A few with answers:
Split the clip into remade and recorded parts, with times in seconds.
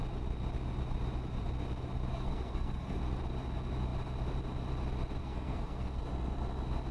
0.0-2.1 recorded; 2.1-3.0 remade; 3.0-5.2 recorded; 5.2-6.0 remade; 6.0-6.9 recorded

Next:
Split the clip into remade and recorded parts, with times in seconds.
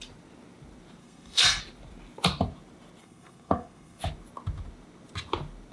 0.0-1.0 recorded; 1.0-1.6 remade; 1.6-3.0 recorded; 3.0-4.0 remade; 4.0-5.7 recorded